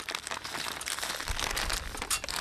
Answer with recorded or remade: recorded